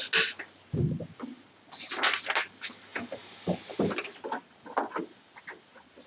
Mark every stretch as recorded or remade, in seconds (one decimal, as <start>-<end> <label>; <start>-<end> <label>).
0.0-2.9 recorded; 2.9-3.9 remade; 3.9-6.1 recorded